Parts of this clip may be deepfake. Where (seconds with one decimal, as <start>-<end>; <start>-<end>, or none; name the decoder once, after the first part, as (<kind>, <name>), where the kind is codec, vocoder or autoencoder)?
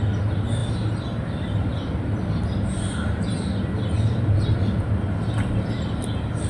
none